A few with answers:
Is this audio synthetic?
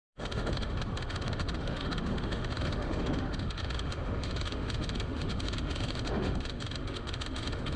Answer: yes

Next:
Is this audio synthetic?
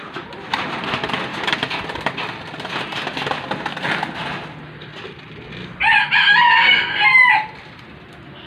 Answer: no